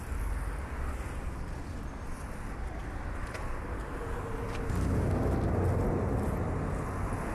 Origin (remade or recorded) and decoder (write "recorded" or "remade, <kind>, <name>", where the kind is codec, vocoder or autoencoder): recorded